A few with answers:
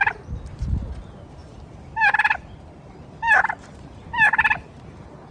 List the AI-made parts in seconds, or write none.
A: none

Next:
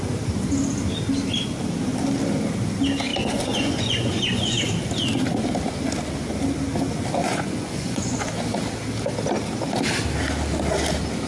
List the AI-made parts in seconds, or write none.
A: 3.1-4.6 (vocoder, Vocos); 7.2-8.2

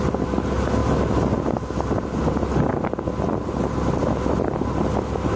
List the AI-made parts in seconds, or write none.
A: none

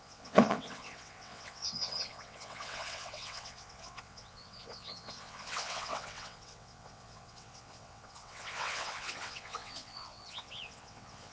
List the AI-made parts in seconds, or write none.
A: 0.0-11.3 (vocoder, WaveNeXt)

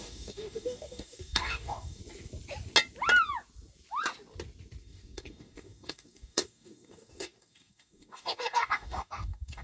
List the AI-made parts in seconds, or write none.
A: 0.0-2.0 (codec, DAC); 4.8-9.6

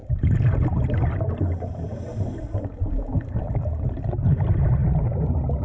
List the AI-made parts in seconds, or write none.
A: none